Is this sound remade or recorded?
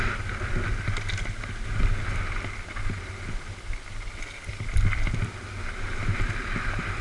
recorded